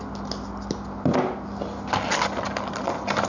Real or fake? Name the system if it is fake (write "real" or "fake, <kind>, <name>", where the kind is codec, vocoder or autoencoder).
real